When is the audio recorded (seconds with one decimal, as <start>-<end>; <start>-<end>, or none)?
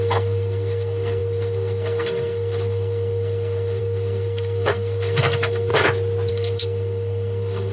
5.7-6.3